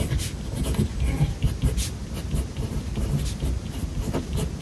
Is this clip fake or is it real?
real